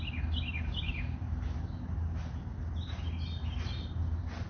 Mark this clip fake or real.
real